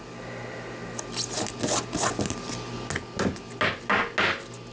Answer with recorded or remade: recorded